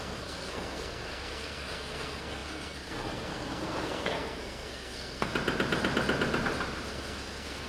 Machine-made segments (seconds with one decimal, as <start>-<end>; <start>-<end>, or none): 0.0-5.3; 6.9-7.7